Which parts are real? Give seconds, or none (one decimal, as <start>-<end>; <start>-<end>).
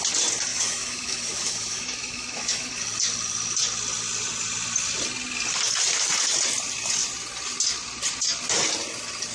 0.0-0.5; 2.7-9.3